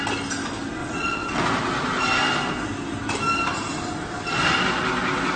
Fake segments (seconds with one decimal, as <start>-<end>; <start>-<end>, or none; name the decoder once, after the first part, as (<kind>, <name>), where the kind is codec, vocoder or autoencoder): 0.8-1.4 (vocoder, WaveNeXt)